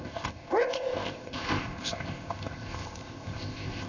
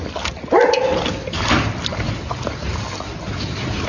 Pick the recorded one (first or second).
second